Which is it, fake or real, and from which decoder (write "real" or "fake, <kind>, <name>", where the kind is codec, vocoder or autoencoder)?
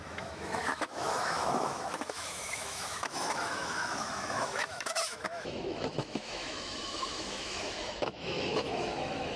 fake, autoencoder, DAC-VAE